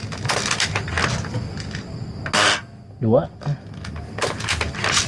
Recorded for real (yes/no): yes